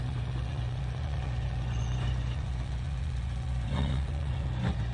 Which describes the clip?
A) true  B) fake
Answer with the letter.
B